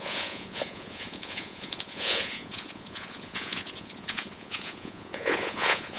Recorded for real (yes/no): no